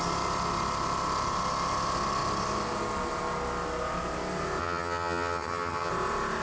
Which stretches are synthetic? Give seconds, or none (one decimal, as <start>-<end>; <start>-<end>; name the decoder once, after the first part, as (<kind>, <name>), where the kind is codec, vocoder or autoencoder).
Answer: 4.6-5.9 (vocoder, HiFi-GAN)

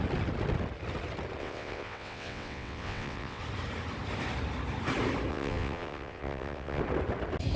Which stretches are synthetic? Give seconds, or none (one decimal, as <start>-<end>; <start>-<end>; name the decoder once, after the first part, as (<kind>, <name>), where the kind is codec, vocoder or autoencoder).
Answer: 1.4-3.4 (vocoder, WaveNeXt); 5.3-6.8

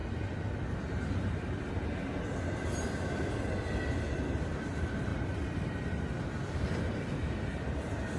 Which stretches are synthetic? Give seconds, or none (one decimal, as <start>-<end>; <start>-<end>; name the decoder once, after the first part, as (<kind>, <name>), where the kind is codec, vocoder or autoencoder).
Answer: 4.4-8.2 (vocoder, BigVGAN v2)

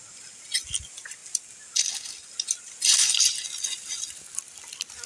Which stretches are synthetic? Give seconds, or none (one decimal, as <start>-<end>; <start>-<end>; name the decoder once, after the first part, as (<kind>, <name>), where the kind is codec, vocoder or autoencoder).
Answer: none

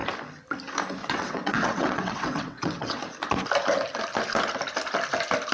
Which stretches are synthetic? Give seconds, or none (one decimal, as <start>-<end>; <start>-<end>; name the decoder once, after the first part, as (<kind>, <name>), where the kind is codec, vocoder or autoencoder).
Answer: 1.0-3.0 (vocoder, WaveNeXt)

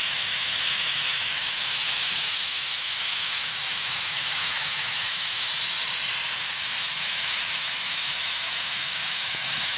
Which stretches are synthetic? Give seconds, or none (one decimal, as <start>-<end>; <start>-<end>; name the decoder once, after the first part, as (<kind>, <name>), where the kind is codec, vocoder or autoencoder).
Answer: 0.0-5.5 (autoencoder, DAC-VAE); 6.4-9.8

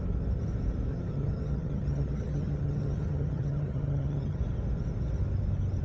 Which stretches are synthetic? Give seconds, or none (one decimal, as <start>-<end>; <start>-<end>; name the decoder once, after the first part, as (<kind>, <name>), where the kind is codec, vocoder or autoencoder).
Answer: 0.9-4.4 (vocoder, HiFi-GAN)

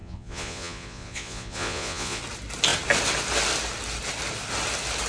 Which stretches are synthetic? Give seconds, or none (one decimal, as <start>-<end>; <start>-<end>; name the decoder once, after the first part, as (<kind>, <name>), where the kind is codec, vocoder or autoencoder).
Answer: 0.0-2.2 (vocoder, Vocos)